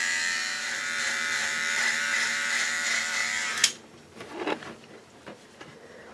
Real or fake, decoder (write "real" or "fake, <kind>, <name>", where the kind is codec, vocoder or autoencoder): fake, vocoder, BigVGAN v2